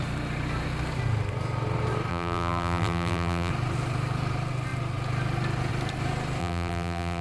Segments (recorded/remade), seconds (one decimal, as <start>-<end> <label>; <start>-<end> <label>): 0.0-2.1 recorded; 2.1-3.5 remade; 3.5-6.4 recorded; 6.4-7.2 remade